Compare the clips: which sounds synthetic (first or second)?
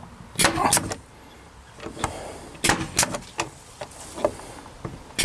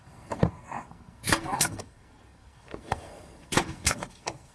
second